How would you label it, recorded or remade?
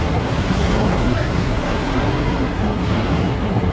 remade